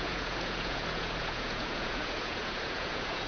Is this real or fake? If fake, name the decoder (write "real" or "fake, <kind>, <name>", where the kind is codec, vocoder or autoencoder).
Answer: fake, vocoder, Vocos